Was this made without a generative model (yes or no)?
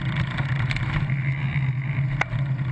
yes